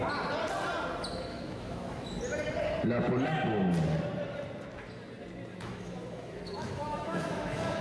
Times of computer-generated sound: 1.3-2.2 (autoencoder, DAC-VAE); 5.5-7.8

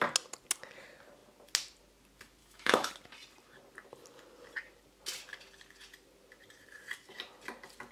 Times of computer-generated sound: 2.4-2.9 (autoencoder, DAC-VAE)

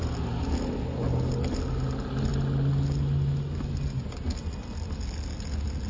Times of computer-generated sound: none

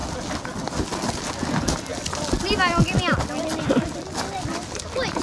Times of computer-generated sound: none

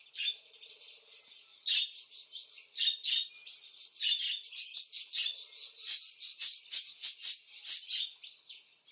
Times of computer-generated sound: none

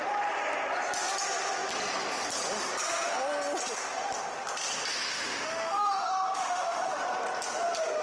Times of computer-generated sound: 4.9-7.0 (autoencoder, DAC-VAE)

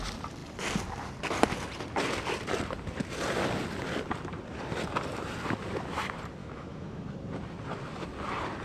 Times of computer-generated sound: 6.4-7.0 (autoencoder, DAC-VAE)